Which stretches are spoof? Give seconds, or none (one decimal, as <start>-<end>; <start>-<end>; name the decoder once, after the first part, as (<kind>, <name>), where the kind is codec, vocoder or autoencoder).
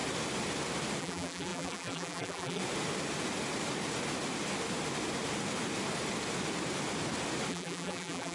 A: 1.0-2.6 (vocoder, BigVGAN v2); 7.5-8.3